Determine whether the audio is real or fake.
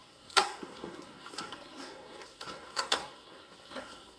fake